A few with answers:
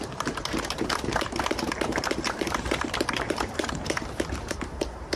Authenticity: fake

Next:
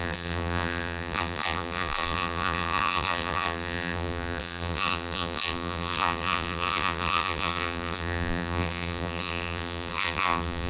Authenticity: fake